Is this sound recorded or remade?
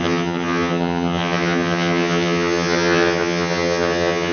remade